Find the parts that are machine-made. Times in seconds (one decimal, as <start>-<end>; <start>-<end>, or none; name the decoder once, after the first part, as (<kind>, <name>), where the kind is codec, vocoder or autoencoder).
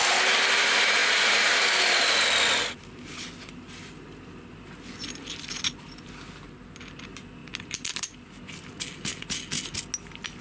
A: none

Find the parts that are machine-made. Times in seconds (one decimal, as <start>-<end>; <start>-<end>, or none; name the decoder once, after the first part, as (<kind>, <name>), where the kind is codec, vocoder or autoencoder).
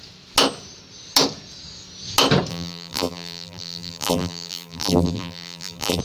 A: 2.5-6.0 (vocoder, BigVGAN v2)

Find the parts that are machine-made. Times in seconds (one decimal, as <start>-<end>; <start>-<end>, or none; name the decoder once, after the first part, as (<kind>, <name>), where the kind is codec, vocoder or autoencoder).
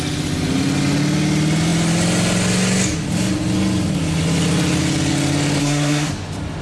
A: 5.6-6.1 (codec, SNAC)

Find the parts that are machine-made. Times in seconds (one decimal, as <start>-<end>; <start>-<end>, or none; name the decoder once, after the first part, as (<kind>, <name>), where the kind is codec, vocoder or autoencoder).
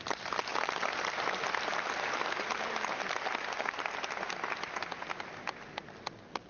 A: none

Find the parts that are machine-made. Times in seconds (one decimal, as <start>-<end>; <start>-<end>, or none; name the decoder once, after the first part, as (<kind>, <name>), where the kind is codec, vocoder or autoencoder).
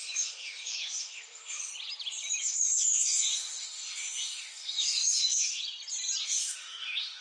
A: 0.0-1.7 (autoencoder, DAC-VAE); 2.4-5.6; 6.2-7.2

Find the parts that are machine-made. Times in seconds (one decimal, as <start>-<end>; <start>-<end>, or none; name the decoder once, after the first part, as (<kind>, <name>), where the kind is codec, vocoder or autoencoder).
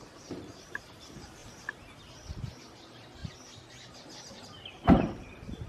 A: 0.0-3.2 (vocoder, BigVGAN v2); 4.7-5.7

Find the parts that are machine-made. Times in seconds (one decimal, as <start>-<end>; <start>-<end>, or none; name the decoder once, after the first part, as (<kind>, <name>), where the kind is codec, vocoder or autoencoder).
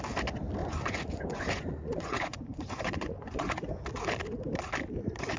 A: 0.6-3.8 (vocoder, Vocos)